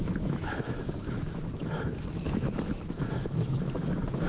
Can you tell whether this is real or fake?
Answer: fake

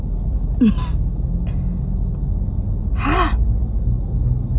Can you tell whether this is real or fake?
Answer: real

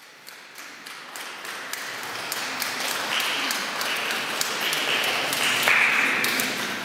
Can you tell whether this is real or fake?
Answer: real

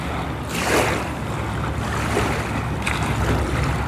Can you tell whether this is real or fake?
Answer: real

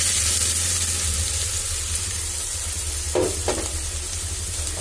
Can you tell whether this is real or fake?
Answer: real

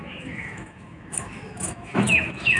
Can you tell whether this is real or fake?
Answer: fake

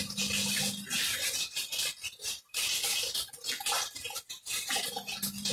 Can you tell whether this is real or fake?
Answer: real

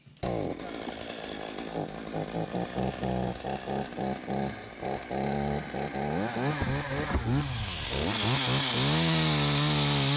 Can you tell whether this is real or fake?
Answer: real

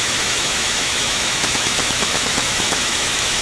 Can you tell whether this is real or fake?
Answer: fake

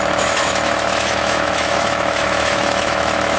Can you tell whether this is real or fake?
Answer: fake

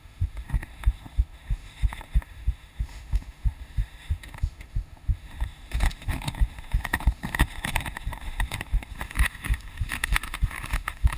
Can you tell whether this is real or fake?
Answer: fake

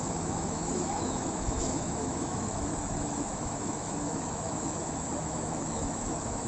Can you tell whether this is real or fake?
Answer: fake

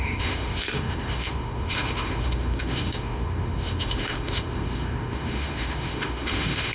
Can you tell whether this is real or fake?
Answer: fake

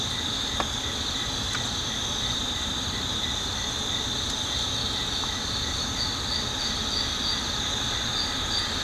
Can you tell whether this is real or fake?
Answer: real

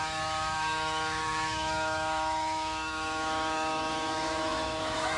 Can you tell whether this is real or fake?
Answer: fake